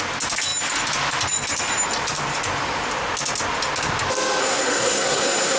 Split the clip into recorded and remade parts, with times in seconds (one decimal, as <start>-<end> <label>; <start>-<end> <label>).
0.0-4.4 recorded; 4.4-5.6 remade